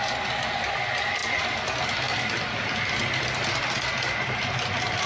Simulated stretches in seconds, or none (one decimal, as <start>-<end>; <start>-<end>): none